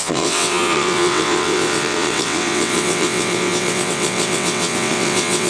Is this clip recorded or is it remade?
remade